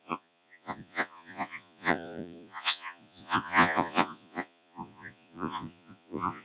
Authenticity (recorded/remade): remade